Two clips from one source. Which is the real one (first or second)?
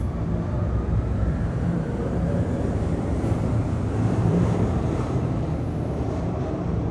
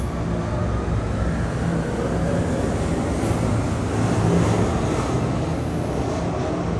second